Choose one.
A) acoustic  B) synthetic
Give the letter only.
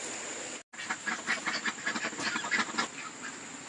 A